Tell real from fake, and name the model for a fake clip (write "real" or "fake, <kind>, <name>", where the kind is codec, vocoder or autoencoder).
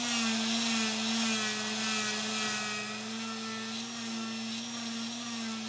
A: real